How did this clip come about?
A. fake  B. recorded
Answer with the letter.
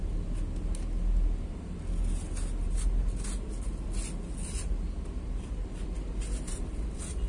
B